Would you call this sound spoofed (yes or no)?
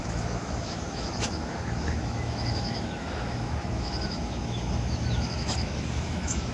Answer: yes